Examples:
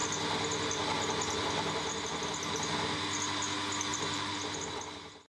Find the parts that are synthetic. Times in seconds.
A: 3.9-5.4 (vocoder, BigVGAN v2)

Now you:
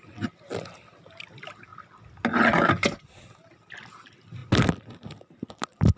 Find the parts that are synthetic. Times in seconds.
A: none

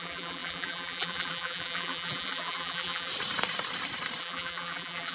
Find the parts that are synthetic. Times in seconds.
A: 0.0-3.1 (vocoder, BigVGAN v2); 4.2-5.1

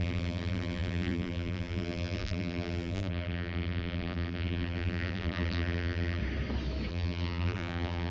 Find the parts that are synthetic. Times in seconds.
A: 0.0-6.2 (vocoder, BigVGAN v2); 6.9-8.1

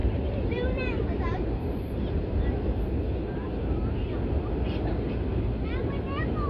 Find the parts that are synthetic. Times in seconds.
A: 0.0-3.9 (vocoder, BigVGAN v2)

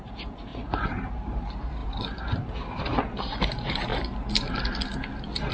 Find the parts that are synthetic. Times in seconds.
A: 0.0-3.9 (vocoder, BigVGAN v2)